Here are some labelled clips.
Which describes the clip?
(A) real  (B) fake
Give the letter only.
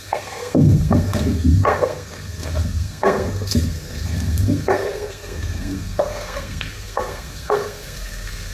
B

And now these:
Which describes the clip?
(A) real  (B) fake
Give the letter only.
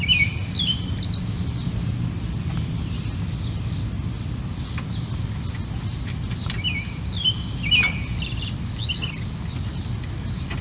A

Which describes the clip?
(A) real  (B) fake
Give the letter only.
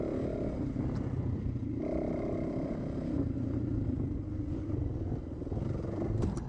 A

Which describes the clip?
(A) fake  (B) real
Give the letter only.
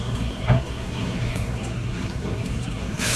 A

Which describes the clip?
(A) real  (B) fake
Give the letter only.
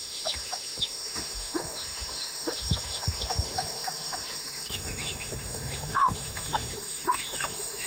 B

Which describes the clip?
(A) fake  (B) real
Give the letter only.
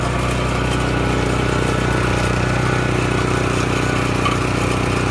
B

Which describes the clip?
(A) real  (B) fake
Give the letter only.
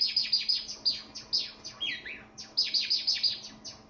A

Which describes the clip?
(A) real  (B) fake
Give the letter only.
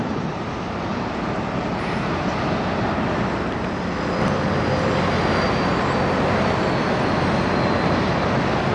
A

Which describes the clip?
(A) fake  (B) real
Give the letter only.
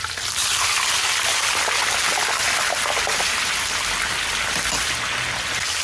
B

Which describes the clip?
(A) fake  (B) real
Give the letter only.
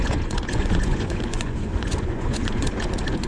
A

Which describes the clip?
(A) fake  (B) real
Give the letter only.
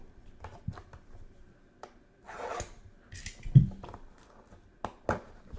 B